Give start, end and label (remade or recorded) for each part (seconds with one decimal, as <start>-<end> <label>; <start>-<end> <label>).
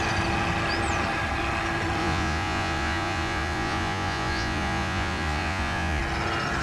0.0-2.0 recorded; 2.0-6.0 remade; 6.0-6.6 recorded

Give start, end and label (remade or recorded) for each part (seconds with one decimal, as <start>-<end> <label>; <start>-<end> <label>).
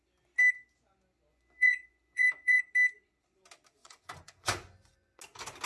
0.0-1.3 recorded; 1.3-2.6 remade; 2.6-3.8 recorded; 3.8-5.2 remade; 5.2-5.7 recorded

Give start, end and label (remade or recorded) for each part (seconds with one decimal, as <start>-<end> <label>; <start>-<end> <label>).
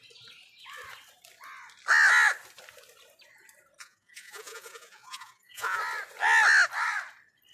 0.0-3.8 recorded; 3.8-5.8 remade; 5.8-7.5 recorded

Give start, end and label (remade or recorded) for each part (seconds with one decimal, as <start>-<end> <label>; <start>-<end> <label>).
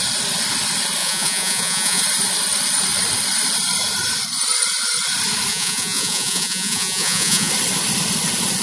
0.0-1.0 recorded; 1.0-2.0 remade; 2.0-5.5 recorded; 5.5-7.5 remade; 7.5-8.6 recorded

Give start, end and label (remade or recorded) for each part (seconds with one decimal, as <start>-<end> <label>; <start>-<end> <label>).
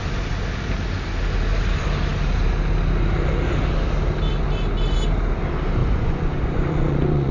0.0-5.8 recorded; 5.8-7.3 remade